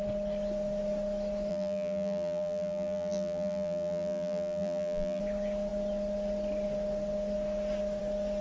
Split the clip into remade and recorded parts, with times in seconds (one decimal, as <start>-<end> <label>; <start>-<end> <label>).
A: 0.0-1.5 recorded; 1.5-5.2 remade; 5.2-8.4 recorded